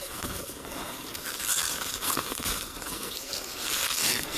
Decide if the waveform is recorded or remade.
remade